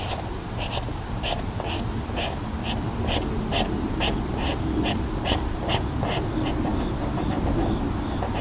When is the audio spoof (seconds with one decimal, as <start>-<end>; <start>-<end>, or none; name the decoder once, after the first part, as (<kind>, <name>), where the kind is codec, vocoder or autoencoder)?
none